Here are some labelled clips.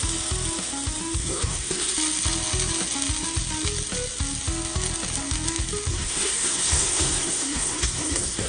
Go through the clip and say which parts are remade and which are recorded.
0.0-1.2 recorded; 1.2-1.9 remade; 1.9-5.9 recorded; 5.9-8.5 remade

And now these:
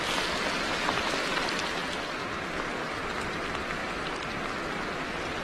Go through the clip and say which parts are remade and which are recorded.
0.0-5.4 recorded